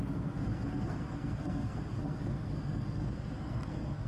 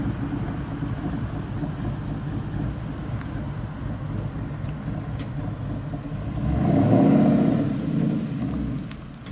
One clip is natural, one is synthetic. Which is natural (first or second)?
second